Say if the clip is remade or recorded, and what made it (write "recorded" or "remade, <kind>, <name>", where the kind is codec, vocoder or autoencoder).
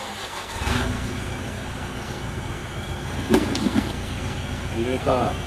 remade, codec, SNAC